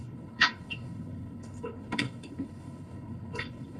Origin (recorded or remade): remade